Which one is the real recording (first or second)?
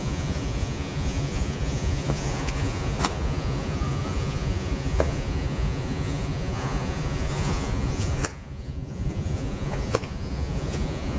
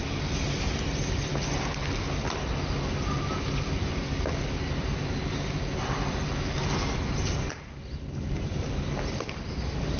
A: second